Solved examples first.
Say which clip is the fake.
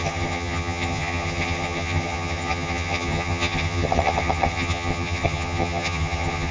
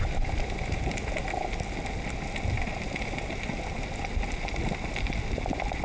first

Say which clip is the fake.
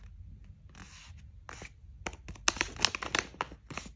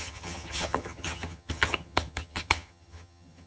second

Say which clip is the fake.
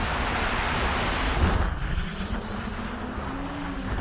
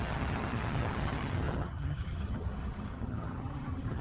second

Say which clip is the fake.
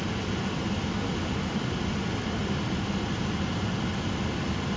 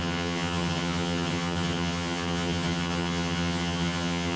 second